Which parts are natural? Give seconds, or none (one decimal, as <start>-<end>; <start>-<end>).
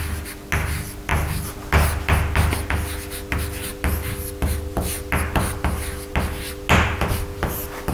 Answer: 0.0-7.9